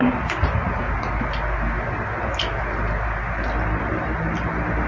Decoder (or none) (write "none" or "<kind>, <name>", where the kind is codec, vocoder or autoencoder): none